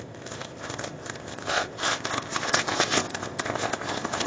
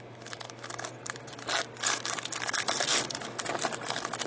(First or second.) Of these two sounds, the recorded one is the second